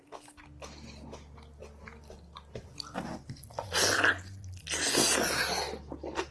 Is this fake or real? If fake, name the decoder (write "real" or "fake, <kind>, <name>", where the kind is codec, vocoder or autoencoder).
real